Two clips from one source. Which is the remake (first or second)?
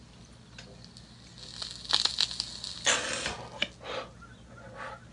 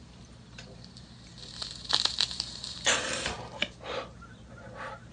second